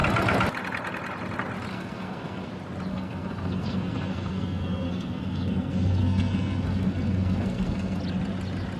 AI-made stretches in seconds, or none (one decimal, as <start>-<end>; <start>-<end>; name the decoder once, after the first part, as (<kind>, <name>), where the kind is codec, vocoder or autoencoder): 1.7-2.5 (codec, SNAC); 2.9-8.0